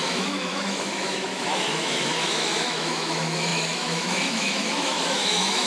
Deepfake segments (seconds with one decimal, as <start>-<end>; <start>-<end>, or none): 0.0-5.7